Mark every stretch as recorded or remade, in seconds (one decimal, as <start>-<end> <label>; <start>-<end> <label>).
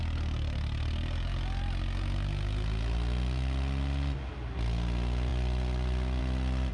0.0-6.7 recorded